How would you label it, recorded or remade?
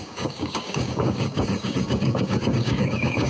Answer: remade